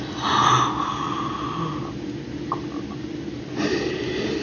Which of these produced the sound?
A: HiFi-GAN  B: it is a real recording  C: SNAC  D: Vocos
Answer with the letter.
B